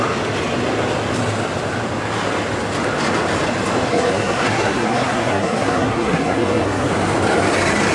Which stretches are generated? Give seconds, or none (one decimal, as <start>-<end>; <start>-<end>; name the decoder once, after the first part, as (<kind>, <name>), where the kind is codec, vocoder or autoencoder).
3.9-6.9 (codec, SNAC)